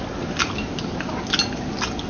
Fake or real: real